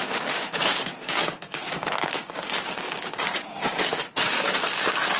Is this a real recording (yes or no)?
no